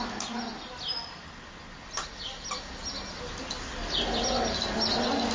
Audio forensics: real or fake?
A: real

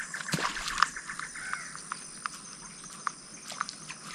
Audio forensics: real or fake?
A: real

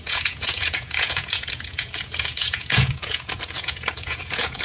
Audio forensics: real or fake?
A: fake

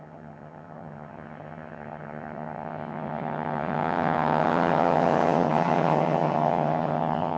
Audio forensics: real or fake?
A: fake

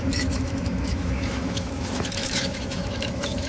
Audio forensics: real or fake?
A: fake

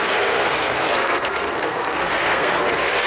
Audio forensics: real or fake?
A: fake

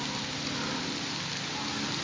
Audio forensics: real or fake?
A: real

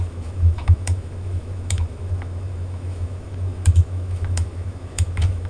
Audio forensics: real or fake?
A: fake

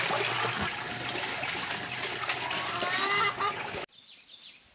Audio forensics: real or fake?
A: real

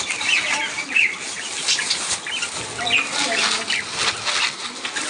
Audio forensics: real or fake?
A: real